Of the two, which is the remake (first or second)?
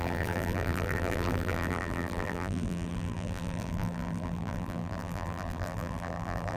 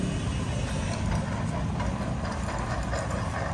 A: first